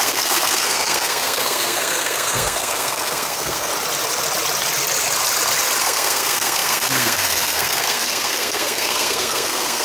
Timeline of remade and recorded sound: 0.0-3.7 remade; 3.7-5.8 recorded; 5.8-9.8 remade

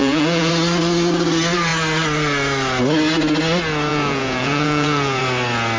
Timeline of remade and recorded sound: 0.0-0.5 remade; 0.5-3.9 recorded; 3.9-5.2 remade; 5.2-5.8 recorded

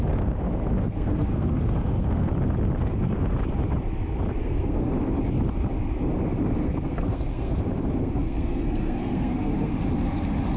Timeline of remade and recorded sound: 0.0-0.8 recorded; 0.8-2.3 remade; 2.3-4.4 recorded; 4.4-4.9 remade; 4.9-6.6 recorded; 6.6-7.6 remade; 7.6-8.0 recorded; 8.0-9.7 remade; 9.7-10.6 recorded

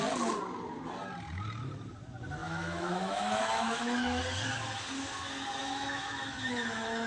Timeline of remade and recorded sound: 0.0-2.4 recorded; 2.4-4.2 remade; 4.2-5.6 recorded; 5.6-7.1 remade